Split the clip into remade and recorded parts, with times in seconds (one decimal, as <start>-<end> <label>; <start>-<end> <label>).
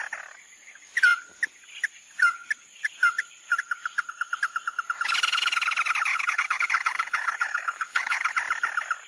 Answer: 0.0-6.1 recorded; 6.1-8.3 remade; 8.3-9.1 recorded